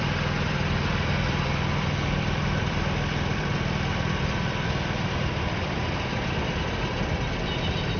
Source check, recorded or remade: remade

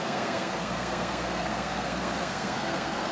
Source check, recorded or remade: remade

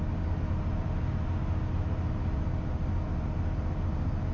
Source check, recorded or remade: recorded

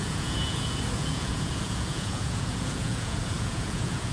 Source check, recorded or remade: remade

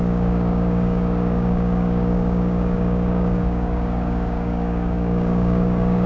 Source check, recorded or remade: remade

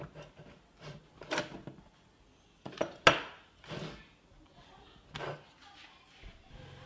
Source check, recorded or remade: recorded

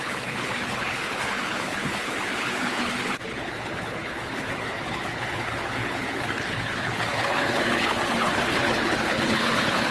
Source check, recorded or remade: remade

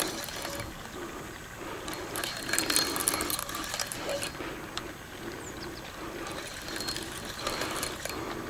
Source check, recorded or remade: recorded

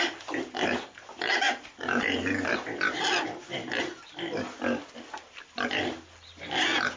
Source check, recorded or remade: recorded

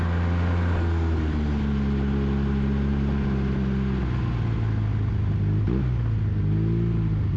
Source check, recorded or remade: recorded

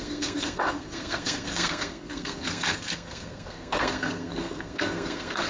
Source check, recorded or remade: remade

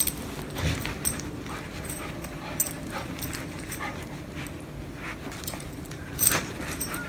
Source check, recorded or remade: recorded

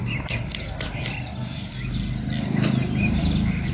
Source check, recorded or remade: remade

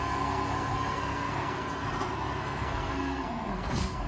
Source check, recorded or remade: remade